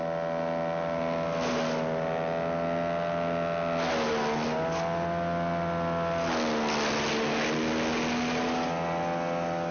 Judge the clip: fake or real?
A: real